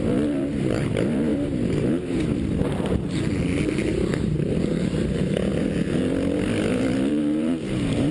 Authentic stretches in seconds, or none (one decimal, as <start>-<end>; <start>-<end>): 5.5-7.1